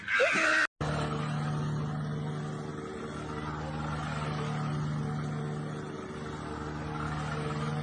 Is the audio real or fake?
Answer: real